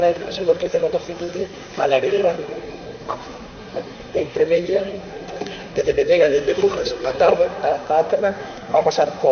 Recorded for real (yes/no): no